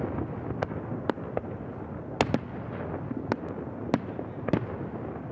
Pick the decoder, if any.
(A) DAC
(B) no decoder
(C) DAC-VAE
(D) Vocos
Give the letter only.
B